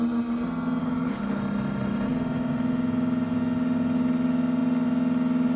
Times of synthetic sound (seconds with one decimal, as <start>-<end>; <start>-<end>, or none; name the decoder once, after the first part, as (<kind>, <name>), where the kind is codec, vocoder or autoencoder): 0.8-1.4 (codec, HILCodec)